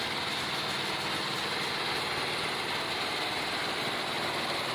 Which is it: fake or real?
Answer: real